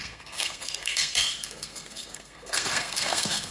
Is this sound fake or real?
fake